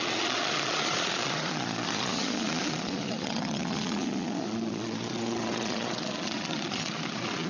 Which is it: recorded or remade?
remade